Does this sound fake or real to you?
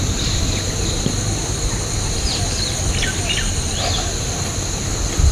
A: real